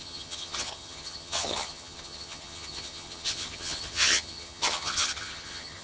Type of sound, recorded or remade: remade